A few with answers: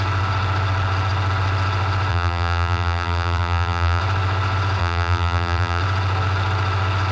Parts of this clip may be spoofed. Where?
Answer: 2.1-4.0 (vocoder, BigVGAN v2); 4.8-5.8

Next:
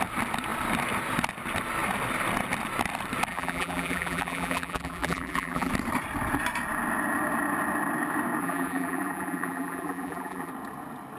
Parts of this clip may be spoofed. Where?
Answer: 3.3-5.7 (vocoder, BigVGAN v2); 8.4-10.5

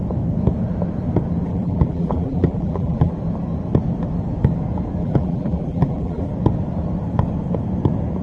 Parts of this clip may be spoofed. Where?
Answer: 1.5-3.1 (vocoder, BigVGAN v2); 5.0-6.3